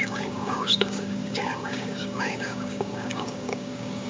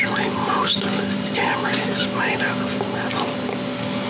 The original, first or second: second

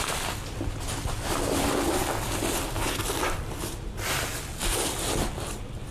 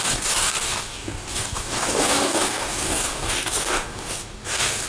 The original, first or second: first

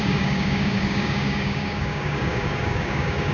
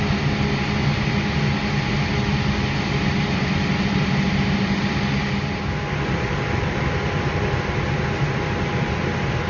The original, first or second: second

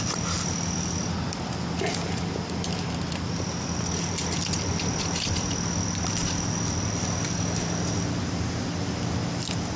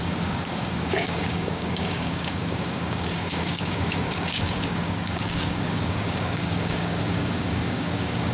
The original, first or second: first